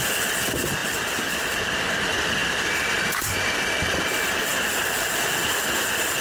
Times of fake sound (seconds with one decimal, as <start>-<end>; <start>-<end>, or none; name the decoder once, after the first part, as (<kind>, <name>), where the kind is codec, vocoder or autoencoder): 2.4-3.7 (vocoder, BigVGAN v2)

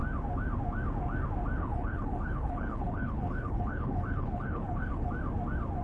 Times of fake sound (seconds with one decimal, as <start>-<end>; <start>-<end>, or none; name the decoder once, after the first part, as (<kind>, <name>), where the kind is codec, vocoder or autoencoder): 1.6-5.1 (codec, HILCodec)

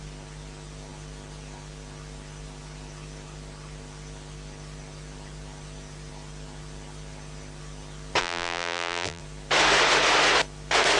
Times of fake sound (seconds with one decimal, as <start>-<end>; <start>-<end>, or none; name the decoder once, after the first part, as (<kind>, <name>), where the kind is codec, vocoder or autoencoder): 8.2-9.2 (vocoder, BigVGAN v2)

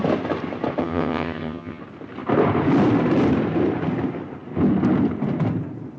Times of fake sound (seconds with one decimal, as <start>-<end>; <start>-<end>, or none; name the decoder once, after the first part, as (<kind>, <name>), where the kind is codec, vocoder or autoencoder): 0.8-1.8 (vocoder, HiFi-GAN)